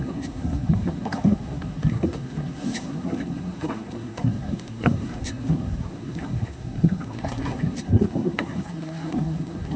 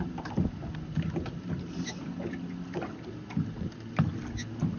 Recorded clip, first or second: second